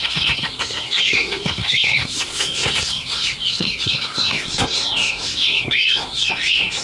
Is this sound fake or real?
fake